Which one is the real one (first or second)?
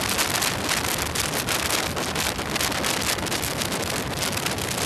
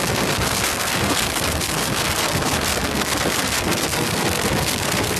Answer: first